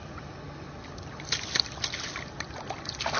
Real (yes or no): yes